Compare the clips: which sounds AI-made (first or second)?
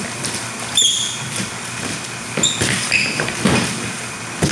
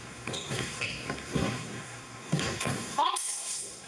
second